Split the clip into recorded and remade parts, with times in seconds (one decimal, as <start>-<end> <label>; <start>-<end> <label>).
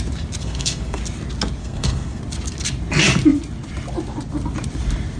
0.0-0.4 recorded; 0.4-1.0 remade; 1.0-1.6 recorded; 1.6-2.2 remade; 2.2-5.2 recorded